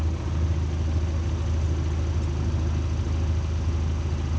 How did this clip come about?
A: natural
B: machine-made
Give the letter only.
A